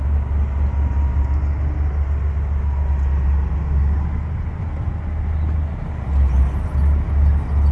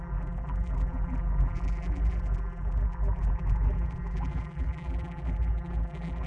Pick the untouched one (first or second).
first